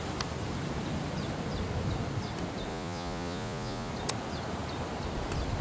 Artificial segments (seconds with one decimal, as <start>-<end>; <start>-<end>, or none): 2.7-3.9